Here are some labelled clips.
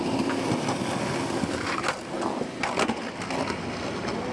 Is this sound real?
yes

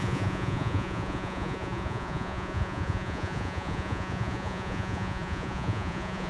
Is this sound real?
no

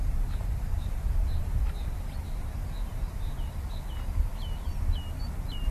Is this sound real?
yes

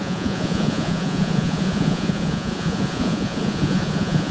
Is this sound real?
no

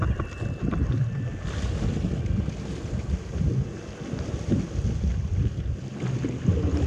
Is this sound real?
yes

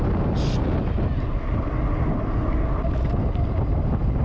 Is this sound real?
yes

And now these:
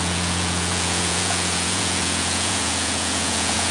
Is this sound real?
no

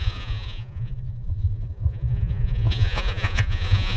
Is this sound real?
no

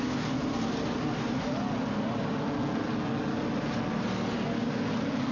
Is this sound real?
yes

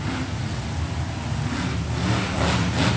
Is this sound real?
yes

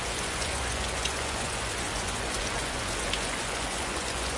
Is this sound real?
no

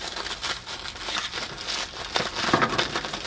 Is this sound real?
yes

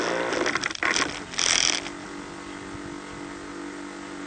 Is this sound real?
yes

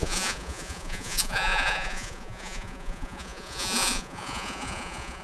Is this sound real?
no